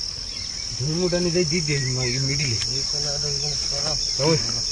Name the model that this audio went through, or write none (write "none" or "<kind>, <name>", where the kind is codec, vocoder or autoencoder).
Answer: none